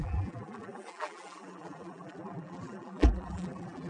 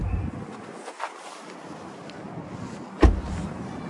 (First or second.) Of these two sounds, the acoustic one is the second